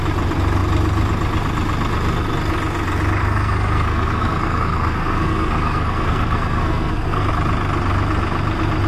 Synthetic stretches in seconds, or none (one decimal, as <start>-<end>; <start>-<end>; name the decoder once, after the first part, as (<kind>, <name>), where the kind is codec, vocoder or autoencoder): 3.2-7.3 (codec, SNAC)